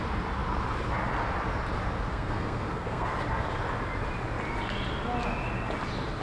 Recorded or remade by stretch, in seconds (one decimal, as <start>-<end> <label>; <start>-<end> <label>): 0.0-2.1 recorded; 2.1-3.1 remade; 3.1-6.2 recorded